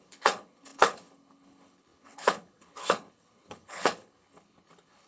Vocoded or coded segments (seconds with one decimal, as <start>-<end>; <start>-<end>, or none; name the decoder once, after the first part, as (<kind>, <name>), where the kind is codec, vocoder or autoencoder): 0.0-5.1 (codec, HILCodec)